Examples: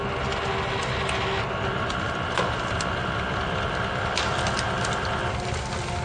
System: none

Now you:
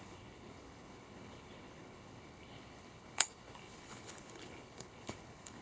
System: codec, HILCodec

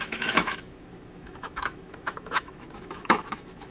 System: autoencoder, DAC-VAE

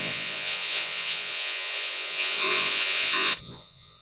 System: vocoder, Vocos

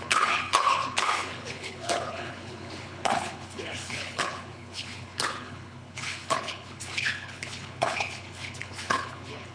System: codec, HILCodec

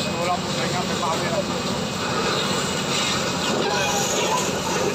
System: none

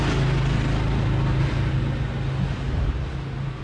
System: none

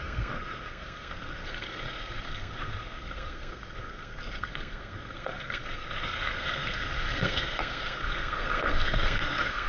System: codec, SNAC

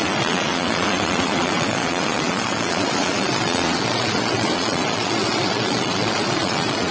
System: vocoder, Vocos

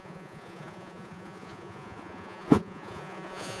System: vocoder, Vocos